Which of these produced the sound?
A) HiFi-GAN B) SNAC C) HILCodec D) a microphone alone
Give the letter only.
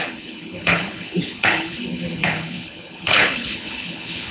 C